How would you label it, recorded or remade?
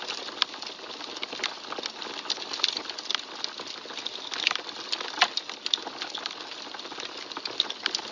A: recorded